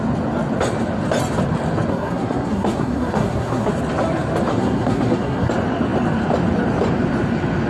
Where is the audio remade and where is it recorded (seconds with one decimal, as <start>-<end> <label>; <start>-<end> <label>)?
0.0-1.9 recorded; 1.9-3.7 remade; 3.7-4.5 recorded; 4.5-5.5 remade; 5.5-7.7 recorded